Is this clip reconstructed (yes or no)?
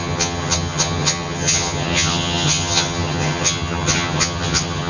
yes